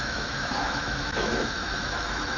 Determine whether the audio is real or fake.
fake